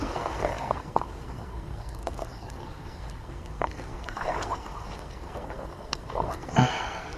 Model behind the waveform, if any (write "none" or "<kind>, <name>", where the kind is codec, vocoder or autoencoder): codec, SNAC